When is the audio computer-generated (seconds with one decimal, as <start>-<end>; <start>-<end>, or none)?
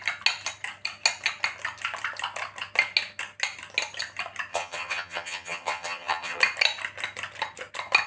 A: 4.5-6.4